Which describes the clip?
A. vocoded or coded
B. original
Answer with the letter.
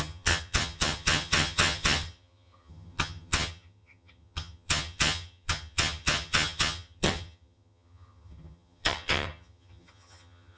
A